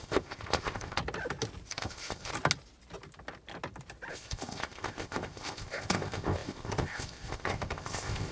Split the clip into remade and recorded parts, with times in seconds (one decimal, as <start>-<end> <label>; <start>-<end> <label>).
0.0-1.0 remade; 1.0-1.7 recorded; 1.7-2.3 remade; 2.3-4.1 recorded; 4.1-8.3 remade